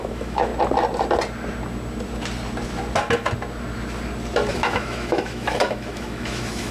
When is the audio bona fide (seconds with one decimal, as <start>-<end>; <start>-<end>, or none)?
0.5-4.5